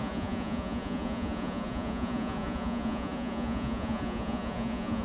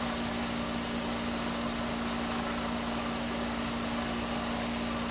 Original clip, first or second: second